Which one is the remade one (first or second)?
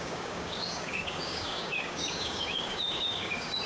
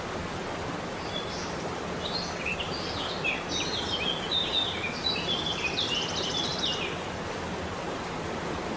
first